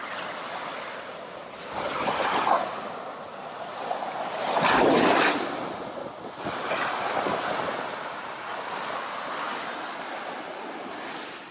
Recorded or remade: recorded